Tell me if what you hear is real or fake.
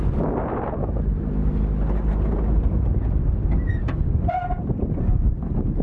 real